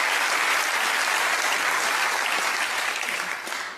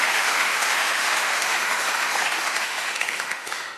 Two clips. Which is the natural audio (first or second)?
first